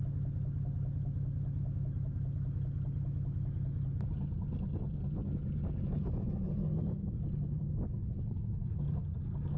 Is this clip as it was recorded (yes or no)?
yes